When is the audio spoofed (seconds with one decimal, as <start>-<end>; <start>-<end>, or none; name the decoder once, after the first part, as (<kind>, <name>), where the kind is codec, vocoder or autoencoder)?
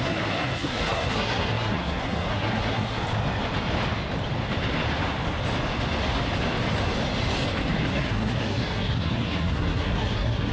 0.0-3.0 (codec, SNAC); 7.9-10.5